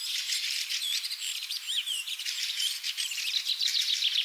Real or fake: fake